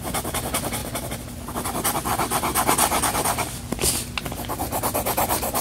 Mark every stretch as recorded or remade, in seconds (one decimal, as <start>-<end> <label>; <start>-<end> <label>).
0.0-5.6 recorded